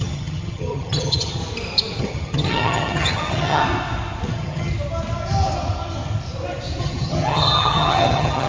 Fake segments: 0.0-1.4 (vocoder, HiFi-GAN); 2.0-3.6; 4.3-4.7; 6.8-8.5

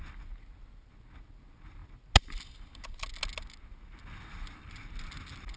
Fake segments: none

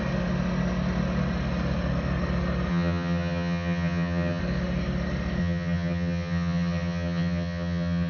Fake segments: 2.7-4.4 (vocoder, HiFi-GAN); 5.4-8.1

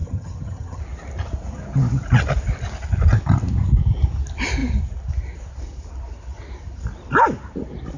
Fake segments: 0.0-0.8 (vocoder, HiFi-GAN)

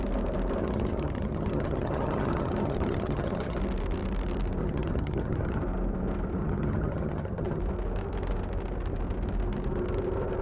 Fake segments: 0.6-3.6 (vocoder, HiFi-GAN); 4.6-5.6; 6.4-7.6